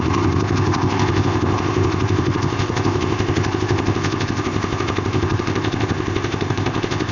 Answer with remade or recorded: remade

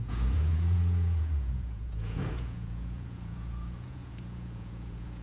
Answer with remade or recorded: remade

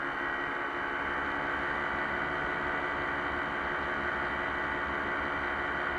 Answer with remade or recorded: recorded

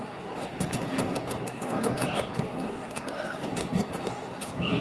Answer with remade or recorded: remade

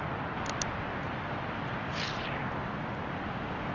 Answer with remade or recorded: recorded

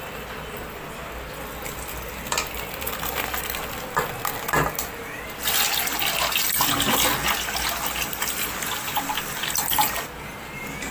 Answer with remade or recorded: recorded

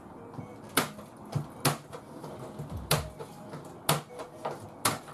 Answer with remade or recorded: recorded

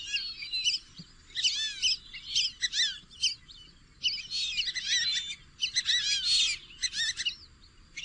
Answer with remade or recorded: recorded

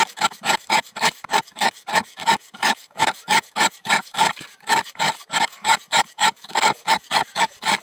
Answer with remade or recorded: remade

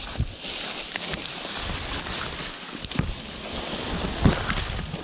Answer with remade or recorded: recorded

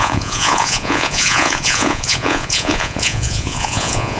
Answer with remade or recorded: remade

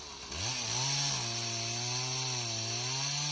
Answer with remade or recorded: recorded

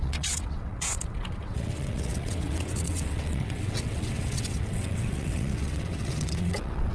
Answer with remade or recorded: remade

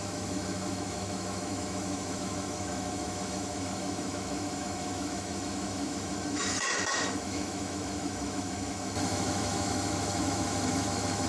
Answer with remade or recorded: remade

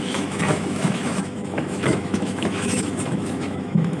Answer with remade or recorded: remade